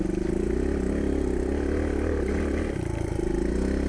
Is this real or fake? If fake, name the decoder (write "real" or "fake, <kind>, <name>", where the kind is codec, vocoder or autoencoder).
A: real